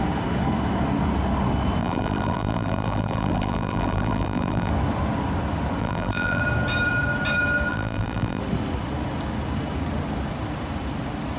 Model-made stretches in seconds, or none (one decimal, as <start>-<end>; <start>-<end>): 1.8-4.7; 5.8-6.4; 7.7-8.4